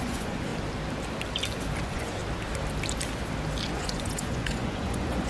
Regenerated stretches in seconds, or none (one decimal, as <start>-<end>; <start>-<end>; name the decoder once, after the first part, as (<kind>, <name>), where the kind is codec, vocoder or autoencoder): 0.0-0.5 (vocoder, Vocos); 1.8-2.2; 3.7-5.3